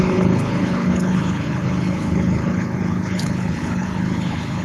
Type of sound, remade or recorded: remade